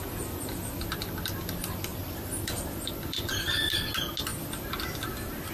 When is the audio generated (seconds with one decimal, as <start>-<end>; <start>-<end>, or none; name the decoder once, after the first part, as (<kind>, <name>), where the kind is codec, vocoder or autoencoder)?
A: 1.9-3.9 (vocoder, BigVGAN v2)